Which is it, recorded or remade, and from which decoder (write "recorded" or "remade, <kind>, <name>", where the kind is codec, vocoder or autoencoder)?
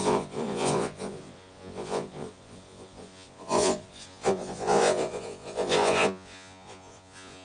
remade, vocoder, Vocos